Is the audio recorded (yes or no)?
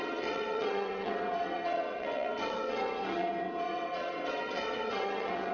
no